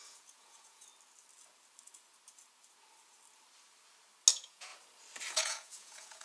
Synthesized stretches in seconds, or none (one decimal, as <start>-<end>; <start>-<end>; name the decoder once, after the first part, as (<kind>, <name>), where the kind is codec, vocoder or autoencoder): 0.0-0.9 (vocoder, Vocos); 4.3-4.7; 5.3-6.2